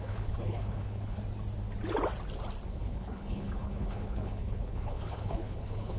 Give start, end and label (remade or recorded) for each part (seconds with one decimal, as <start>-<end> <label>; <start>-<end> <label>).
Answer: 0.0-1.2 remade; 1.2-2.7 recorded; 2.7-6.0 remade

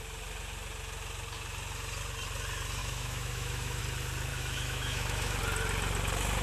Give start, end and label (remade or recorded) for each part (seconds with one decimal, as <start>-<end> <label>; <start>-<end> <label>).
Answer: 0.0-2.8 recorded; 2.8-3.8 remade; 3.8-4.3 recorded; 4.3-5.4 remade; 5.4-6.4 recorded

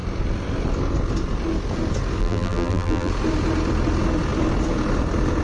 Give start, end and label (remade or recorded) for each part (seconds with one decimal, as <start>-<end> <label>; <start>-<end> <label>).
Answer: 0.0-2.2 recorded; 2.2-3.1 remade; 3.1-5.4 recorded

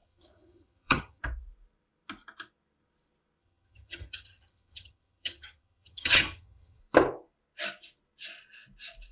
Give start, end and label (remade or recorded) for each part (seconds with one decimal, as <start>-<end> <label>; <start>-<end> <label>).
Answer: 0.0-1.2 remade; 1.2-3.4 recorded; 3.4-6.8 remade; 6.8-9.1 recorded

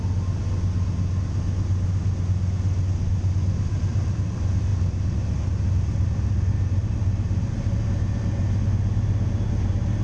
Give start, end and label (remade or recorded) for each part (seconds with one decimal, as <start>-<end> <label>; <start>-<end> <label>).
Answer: 0.0-10.0 recorded